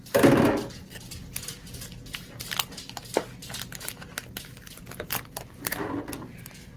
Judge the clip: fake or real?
real